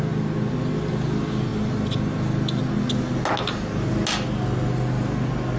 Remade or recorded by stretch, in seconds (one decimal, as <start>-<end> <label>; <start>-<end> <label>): 0.0-5.6 recorded